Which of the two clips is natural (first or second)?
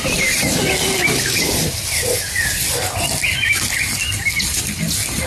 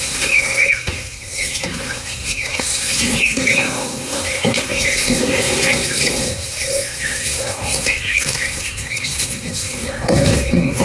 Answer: first